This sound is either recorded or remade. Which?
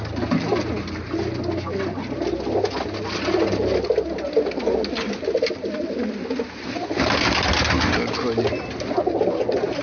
recorded